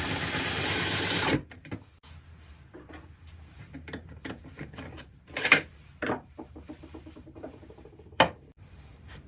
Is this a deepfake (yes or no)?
yes